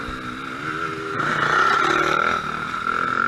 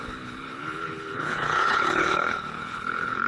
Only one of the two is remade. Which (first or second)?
second